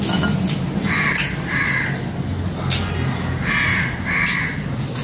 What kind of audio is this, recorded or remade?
recorded